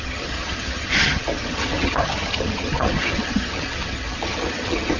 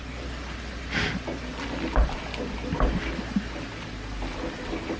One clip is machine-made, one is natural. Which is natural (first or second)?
second